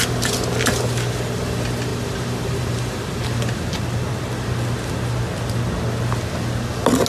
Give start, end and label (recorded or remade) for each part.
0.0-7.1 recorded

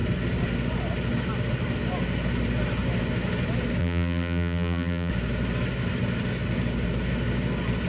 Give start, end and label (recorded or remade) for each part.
0.0-3.8 recorded; 3.8-5.1 remade; 5.1-7.9 recorded